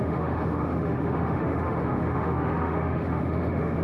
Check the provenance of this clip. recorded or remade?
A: remade